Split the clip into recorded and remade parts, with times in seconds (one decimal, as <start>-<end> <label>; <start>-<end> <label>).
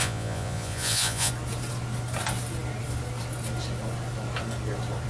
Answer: 0.0-1.3 remade; 1.3-5.1 recorded